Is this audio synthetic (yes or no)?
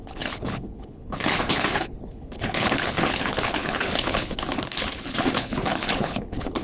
yes